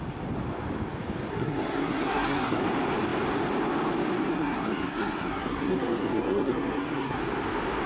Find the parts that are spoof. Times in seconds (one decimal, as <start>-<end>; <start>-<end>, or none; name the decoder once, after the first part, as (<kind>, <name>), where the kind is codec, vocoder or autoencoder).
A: 1.3-2.6 (codec, SNAC); 4.3-7.2